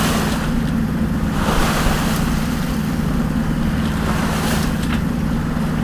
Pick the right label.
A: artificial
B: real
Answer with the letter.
B